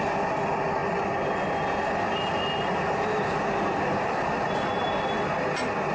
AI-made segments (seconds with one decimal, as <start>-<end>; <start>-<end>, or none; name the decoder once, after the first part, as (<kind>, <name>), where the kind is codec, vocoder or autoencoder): none